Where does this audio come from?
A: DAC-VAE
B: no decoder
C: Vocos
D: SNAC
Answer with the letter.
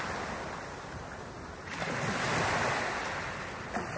B